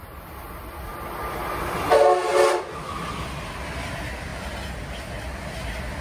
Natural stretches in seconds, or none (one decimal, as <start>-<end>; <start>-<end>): 0.0-6.0